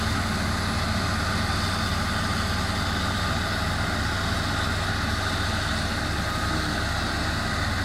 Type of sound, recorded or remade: recorded